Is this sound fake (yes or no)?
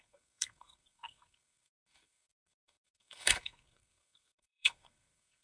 yes